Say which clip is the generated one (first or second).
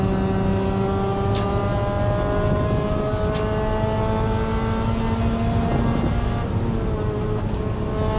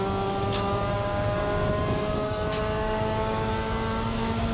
second